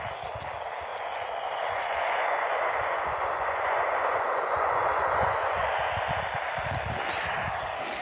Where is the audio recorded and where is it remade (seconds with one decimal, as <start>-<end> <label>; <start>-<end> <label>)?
0.0-0.9 recorded; 0.9-5.7 remade; 5.7-8.0 recorded